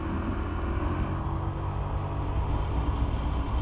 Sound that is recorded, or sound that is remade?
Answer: recorded